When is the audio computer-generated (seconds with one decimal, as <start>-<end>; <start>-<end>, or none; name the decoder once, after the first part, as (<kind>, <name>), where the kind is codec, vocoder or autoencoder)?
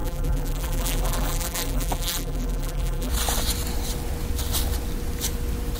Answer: 0.0-3.1 (vocoder, BigVGAN v2)